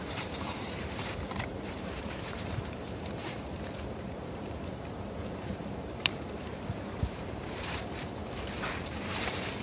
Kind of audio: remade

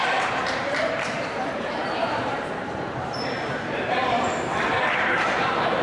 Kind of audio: remade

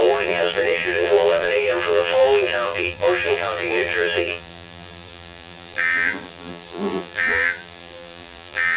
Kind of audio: remade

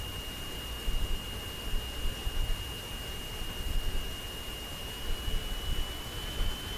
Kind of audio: recorded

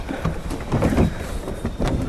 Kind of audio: remade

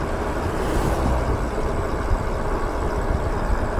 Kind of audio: remade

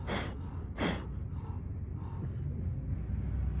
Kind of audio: recorded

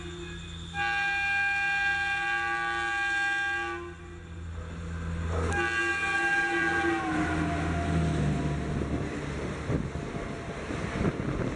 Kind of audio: recorded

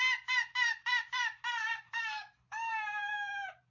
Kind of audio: remade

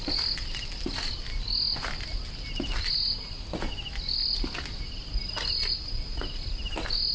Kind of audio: recorded